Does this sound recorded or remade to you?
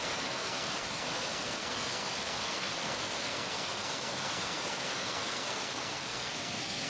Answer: remade